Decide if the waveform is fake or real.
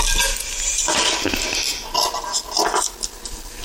real